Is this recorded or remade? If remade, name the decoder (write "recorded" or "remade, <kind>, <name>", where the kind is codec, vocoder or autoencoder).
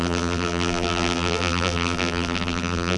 remade, vocoder, BigVGAN v2